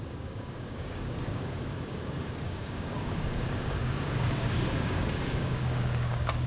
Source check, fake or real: fake